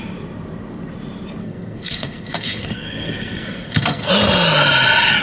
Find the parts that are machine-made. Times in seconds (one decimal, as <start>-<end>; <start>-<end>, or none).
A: 1.4-4.1